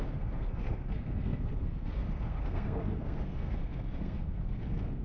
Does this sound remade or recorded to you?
remade